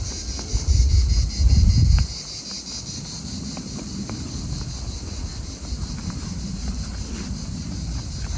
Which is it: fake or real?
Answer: real